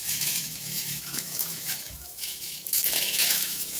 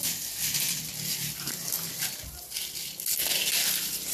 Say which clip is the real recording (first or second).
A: second